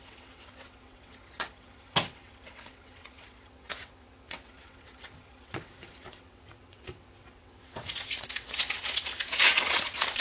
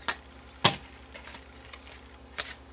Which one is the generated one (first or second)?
first